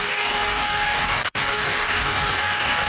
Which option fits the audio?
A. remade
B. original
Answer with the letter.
A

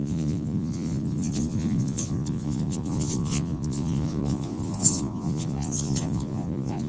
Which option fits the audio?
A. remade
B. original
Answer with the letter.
A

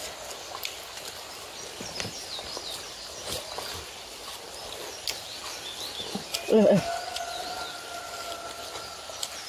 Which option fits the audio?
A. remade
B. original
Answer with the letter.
B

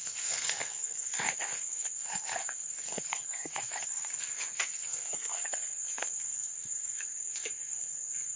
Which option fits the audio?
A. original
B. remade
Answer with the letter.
B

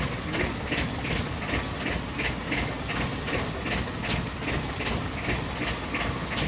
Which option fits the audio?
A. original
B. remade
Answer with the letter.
A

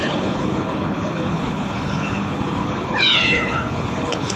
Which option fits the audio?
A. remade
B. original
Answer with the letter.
A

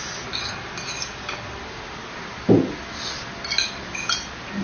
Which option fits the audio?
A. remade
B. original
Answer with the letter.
B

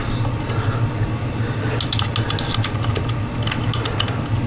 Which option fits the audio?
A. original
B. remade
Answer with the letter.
A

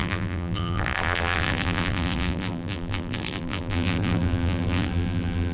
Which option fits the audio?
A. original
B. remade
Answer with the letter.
B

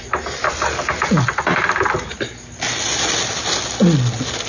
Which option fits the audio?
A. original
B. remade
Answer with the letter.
A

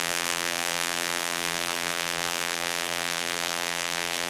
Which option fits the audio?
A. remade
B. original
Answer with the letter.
A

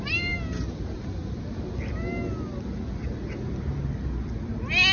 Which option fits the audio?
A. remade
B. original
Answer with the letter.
B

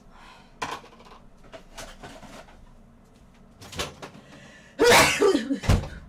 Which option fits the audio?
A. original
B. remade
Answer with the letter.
A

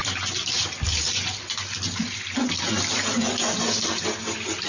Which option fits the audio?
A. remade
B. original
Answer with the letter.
B